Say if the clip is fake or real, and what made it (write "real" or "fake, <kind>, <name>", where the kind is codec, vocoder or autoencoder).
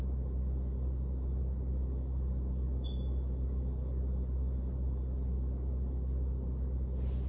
real